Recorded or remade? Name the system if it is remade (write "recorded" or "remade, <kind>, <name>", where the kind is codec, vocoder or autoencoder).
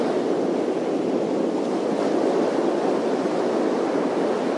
recorded